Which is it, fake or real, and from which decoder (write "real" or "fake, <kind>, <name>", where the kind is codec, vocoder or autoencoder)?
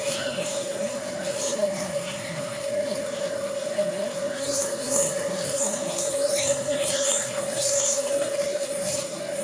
fake, codec, SNAC